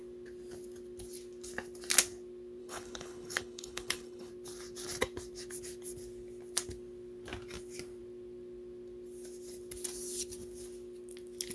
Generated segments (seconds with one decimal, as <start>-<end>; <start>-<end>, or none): 2.6-4.3